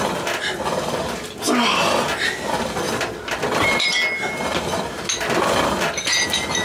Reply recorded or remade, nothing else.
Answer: recorded